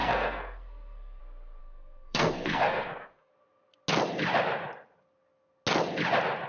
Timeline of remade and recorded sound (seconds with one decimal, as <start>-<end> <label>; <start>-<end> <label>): 0.0-1.2 remade; 1.2-1.6 recorded; 1.6-3.3 remade; 3.3-6.5 recorded